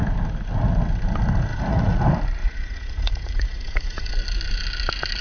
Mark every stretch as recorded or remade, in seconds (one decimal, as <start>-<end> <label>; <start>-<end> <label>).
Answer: 0.0-1.5 recorded; 1.5-2.0 remade; 2.0-2.4 recorded; 2.4-4.1 remade; 4.1-5.2 recorded